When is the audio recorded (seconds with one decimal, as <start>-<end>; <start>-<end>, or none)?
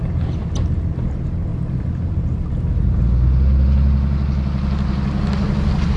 0.0-1.5; 2.7-6.0